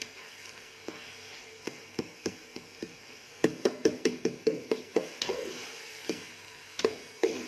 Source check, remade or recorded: remade